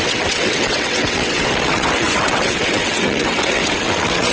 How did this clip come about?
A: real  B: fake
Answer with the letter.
B